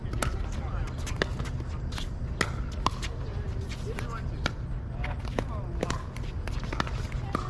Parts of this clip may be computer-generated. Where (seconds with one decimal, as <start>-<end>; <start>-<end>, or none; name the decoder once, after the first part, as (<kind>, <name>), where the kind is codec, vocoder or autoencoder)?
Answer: none